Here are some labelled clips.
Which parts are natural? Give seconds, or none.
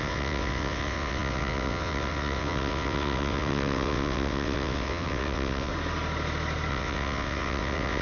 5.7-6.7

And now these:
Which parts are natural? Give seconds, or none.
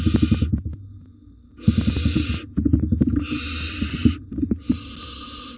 0.0-5.6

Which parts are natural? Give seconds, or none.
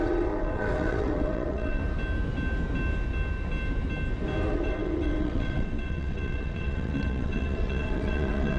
1.8-4.5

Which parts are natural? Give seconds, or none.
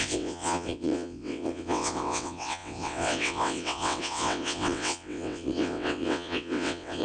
none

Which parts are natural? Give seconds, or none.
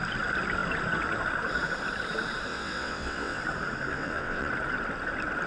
0.0-2.5; 3.4-3.9; 4.5-5.5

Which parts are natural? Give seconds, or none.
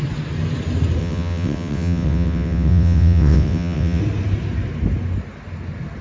0.0-1.0; 4.0-6.0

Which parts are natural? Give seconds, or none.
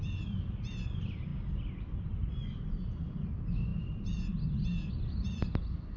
0.0-6.0